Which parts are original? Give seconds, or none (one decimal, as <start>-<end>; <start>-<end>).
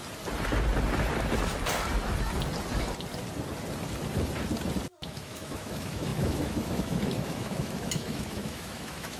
0.0-5.0